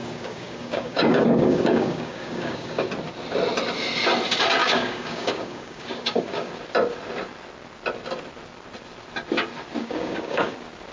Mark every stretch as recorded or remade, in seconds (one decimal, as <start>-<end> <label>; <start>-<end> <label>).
0.0-2.9 remade; 2.9-4.6 recorded; 4.6-6.5 remade; 6.5-9.8 recorded; 9.8-10.5 remade; 10.5-10.9 recorded